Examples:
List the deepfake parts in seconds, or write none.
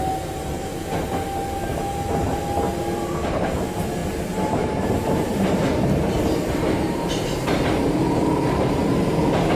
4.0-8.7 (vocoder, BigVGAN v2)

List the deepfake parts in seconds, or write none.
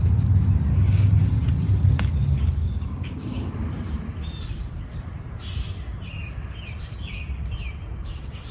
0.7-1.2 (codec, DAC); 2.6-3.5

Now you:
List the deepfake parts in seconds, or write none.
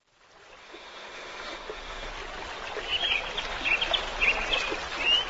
0.6-2.1 (autoencoder, DAC-VAE)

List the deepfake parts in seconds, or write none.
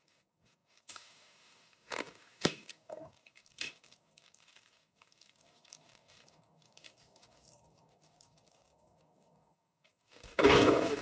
0.0-11.0 (codec, DAC)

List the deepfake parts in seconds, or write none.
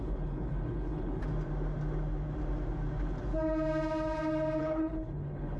0.0-1.2 (codec, HILCodec); 4.6-5.6